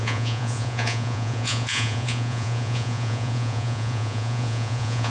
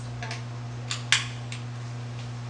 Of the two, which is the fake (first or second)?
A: first